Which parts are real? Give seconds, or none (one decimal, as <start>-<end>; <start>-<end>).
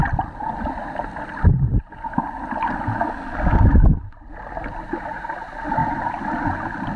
0.0-7.0